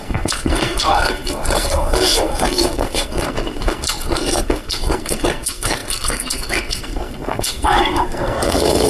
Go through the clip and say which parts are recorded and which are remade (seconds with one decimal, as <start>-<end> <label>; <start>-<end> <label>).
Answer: 0.0-8.9 remade